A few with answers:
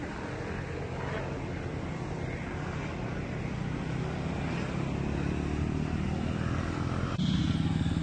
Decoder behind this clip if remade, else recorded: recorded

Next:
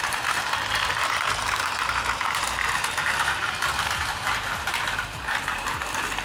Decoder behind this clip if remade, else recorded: remade, vocoder, BigVGAN v2